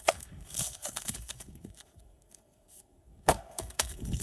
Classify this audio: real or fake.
fake